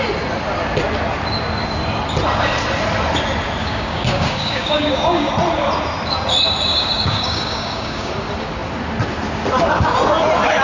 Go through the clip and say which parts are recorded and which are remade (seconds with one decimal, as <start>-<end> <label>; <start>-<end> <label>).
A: 0.0-3.6 recorded; 3.6-5.3 remade; 5.3-6.7 recorded; 6.7-8.1 remade; 8.1-10.6 recorded